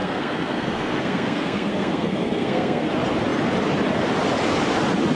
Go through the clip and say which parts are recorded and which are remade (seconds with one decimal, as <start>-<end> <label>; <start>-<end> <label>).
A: 0.0-2.9 remade; 2.9-5.2 recorded